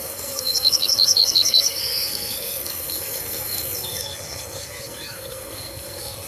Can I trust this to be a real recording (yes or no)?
no